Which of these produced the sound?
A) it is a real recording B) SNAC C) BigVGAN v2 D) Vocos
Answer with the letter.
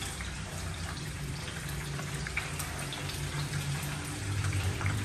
C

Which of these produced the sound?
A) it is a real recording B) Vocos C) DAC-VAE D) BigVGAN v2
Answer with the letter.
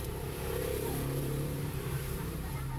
D